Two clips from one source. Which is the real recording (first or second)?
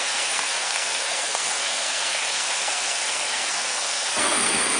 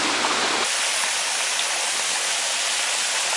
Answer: second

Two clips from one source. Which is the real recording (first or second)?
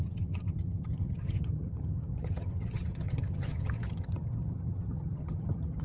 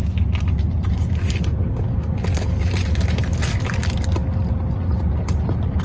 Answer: second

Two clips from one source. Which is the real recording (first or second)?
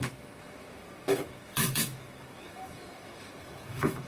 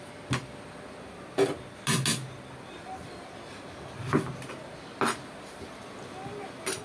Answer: second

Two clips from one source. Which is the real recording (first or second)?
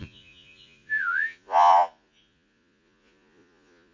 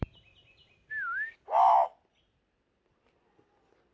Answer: second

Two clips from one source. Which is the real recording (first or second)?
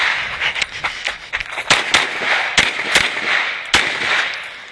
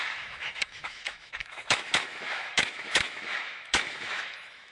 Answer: first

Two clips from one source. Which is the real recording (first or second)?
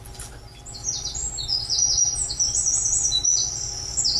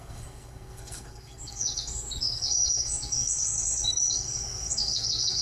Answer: first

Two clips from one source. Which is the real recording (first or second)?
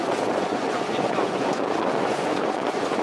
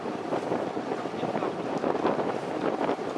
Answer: second